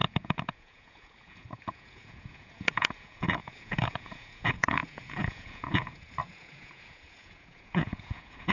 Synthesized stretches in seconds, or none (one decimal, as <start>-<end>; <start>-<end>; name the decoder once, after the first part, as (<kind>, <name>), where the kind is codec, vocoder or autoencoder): 0.0-8.5 (vocoder, Vocos)